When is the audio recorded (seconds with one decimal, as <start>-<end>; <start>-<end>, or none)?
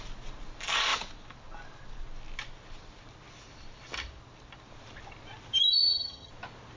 0.0-5.8; 6.3-6.8